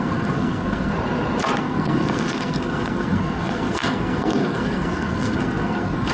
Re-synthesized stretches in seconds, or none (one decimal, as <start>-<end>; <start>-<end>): 0.0-0.9; 1.6-6.1